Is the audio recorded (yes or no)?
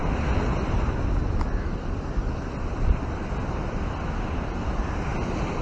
yes